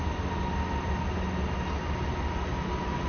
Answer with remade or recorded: recorded